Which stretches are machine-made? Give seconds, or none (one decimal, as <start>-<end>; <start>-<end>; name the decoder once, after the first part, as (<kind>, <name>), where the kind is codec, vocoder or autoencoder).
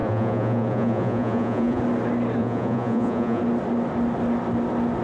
0.0-1.8 (vocoder, Vocos); 2.4-3.4